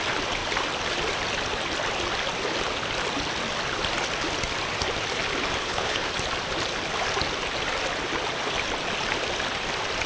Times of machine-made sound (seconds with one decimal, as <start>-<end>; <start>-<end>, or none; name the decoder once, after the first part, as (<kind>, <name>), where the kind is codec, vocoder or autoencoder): 5.6-6.1 (codec, HILCodec)